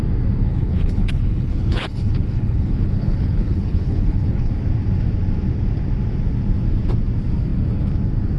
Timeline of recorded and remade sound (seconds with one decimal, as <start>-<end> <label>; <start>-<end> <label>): 0.0-0.5 recorded; 0.5-4.5 remade; 4.5-8.4 recorded